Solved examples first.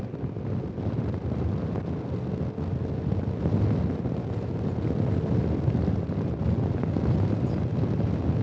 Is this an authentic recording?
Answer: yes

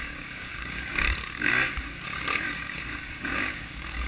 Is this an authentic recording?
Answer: no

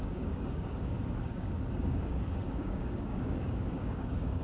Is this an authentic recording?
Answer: no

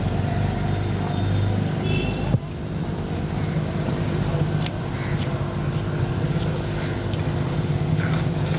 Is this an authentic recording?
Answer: yes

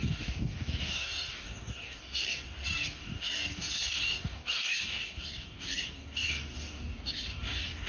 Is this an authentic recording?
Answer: no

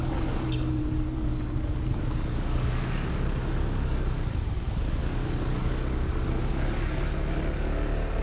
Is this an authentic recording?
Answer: no